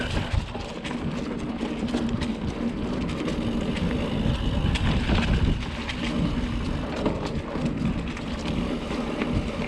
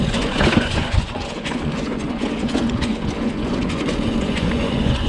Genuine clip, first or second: first